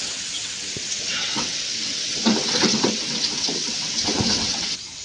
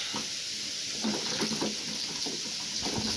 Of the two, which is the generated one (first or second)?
first